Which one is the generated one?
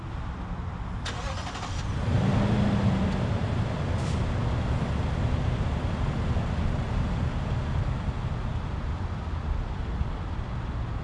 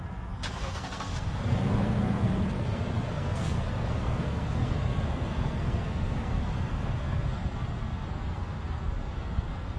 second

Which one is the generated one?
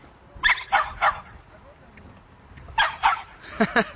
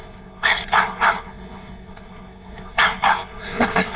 second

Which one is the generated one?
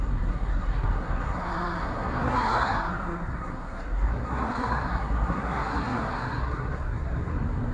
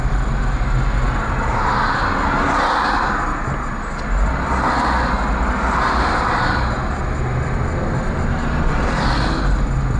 first